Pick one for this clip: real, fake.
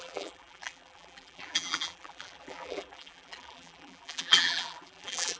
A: fake